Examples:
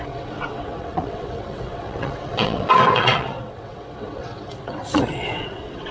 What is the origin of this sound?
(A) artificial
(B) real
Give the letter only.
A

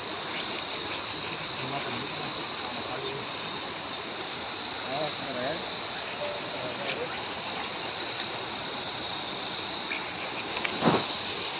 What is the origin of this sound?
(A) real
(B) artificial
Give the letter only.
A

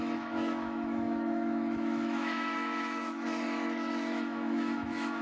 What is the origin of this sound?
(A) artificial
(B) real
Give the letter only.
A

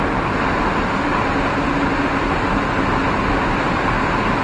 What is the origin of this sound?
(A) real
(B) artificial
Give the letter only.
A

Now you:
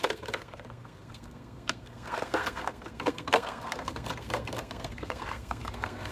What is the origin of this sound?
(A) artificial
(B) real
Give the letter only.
A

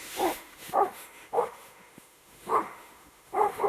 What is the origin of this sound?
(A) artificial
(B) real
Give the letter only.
A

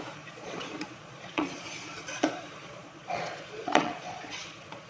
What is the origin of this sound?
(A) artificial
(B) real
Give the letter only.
A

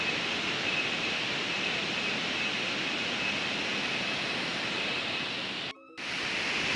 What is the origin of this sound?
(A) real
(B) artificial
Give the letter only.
A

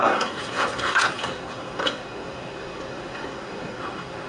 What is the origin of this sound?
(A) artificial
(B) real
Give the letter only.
A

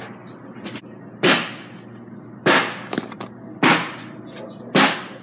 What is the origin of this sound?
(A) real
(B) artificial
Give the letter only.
A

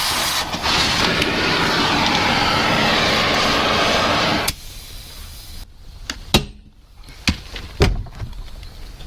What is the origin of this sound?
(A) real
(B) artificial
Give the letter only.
A